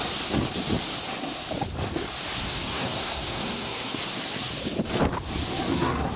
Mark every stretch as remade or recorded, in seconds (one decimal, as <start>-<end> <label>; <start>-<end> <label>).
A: 0.0-2.4 recorded; 2.4-4.0 remade; 4.0-5.7 recorded; 5.7-6.2 remade